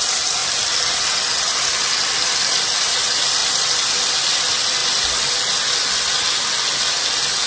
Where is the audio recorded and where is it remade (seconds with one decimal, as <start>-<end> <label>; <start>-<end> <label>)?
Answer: 0.0-7.5 recorded

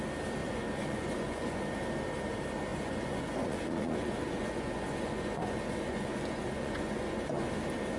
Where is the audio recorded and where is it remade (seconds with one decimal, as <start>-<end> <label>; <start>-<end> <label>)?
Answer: 0.0-0.4 recorded; 0.4-1.6 remade; 1.6-2.7 recorded; 2.7-7.5 remade; 7.5-8.0 recorded

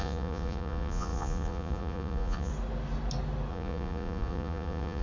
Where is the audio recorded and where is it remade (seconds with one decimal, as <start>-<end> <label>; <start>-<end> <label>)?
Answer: 0.0-2.5 remade; 2.5-3.5 recorded; 3.5-5.0 remade